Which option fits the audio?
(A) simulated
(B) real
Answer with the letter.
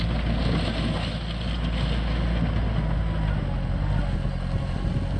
B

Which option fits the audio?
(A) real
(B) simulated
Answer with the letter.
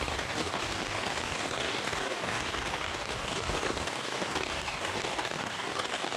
B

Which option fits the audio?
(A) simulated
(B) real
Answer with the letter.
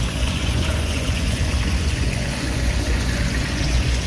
A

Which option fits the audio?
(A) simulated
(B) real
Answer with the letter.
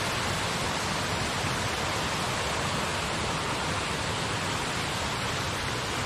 B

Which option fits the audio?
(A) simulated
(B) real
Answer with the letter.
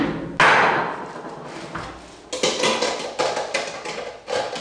B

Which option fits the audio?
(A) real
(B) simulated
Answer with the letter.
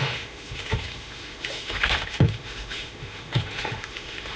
B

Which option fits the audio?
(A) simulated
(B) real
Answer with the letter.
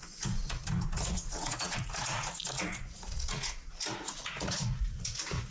A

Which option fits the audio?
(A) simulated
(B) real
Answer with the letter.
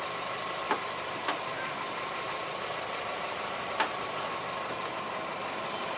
B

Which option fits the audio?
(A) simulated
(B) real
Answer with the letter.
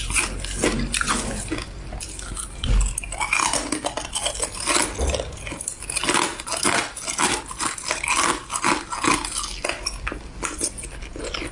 B